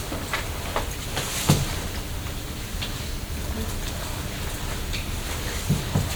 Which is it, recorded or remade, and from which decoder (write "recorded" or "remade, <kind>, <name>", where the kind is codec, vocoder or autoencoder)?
recorded